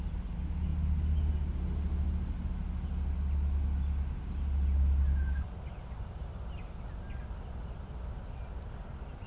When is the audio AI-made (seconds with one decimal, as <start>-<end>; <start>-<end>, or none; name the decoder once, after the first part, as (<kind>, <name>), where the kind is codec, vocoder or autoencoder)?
none